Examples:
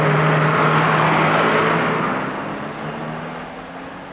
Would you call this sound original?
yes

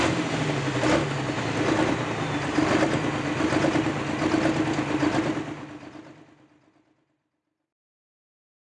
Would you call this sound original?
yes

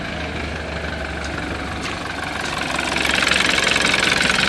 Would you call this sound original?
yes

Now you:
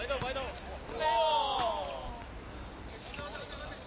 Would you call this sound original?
yes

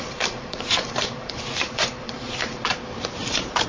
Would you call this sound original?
no